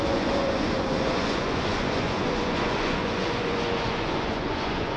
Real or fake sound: fake